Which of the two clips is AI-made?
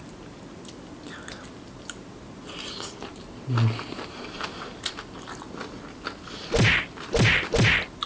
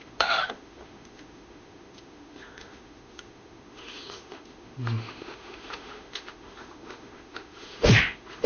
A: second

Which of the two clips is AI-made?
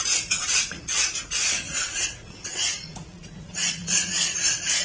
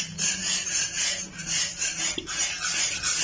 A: first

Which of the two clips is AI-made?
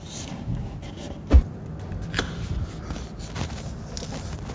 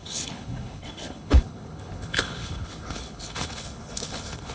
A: second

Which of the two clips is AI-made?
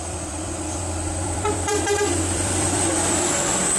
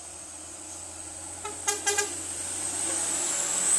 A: first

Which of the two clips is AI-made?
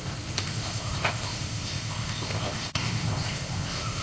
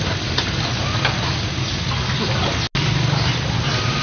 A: first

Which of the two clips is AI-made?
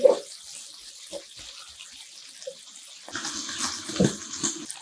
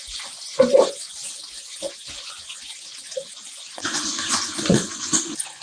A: second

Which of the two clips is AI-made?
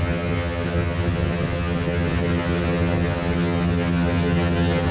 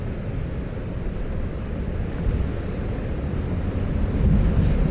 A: first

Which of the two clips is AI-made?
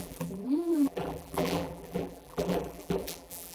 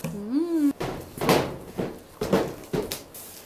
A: first